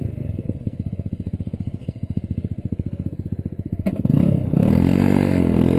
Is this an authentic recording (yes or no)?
no